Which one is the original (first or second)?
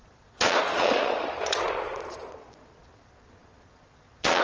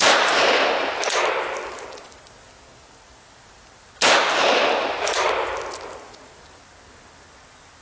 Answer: second